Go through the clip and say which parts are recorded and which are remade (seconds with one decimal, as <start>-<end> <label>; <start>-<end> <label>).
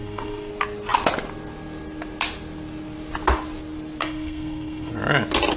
0.0-0.5 remade; 0.5-4.0 recorded; 4.0-4.9 remade; 4.9-5.6 recorded